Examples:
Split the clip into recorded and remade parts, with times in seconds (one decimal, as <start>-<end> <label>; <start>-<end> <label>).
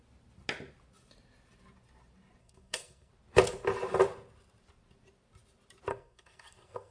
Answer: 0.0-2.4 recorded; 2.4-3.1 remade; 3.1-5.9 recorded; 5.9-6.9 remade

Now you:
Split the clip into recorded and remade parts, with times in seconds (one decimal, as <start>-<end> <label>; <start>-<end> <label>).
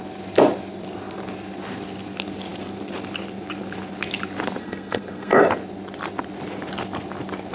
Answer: 0.0-4.6 recorded; 4.6-5.4 remade; 5.4-7.5 recorded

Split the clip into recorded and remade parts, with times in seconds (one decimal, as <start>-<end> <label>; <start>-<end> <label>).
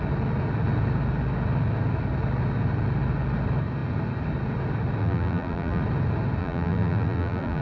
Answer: 0.0-5.0 recorded; 5.0-5.8 remade; 5.8-6.4 recorded; 6.4-7.6 remade